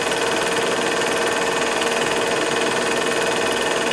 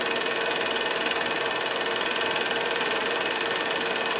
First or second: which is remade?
second